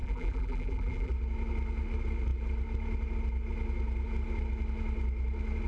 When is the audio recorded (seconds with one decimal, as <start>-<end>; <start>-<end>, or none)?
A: 1.1-5.7